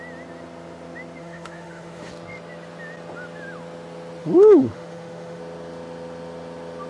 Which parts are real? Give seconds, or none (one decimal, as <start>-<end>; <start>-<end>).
0.0-1.2; 2.1-4.2; 5.4-6.9